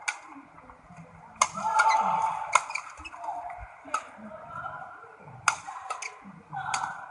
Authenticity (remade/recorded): recorded